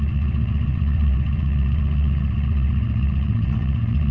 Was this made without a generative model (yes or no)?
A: no